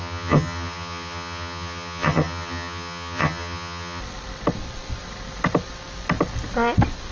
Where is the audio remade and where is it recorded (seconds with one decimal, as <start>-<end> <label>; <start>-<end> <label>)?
0.0-4.0 remade; 4.0-7.1 recorded